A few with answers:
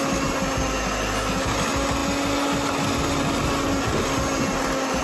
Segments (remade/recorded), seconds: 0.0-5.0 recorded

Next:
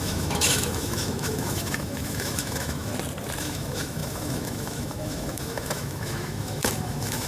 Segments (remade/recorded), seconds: 0.0-2.9 remade; 2.9-3.4 recorded; 3.4-7.3 remade

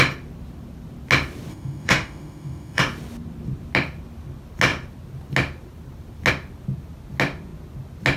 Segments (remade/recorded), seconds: 0.0-1.5 recorded; 1.5-2.8 remade; 2.8-8.2 recorded

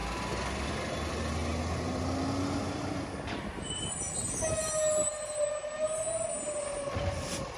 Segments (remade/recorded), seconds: 0.0-7.6 recorded

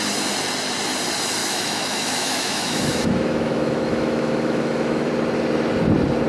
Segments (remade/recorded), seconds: 0.0-1.4 recorded; 1.4-5.1 remade; 5.1-6.3 recorded